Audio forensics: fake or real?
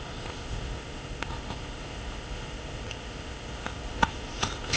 fake